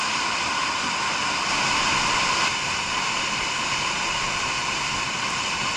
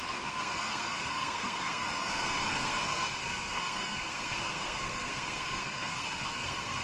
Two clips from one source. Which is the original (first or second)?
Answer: first